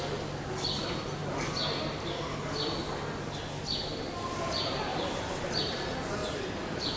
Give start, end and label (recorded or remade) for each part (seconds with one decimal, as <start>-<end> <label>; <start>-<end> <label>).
0.0-7.0 recorded